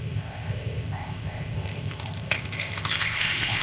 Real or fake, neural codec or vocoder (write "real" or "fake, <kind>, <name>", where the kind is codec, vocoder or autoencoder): fake, codec, ZipCodec